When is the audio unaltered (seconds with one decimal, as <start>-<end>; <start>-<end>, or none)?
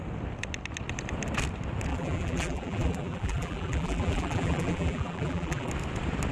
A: 0.0-1.9; 5.7-6.3